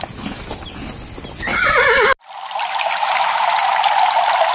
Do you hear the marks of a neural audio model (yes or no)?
no